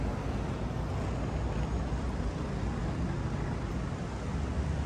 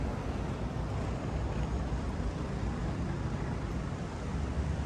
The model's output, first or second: second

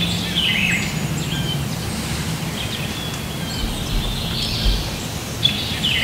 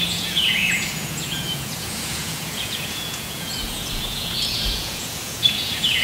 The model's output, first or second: second